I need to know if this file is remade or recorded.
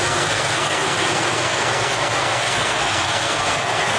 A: remade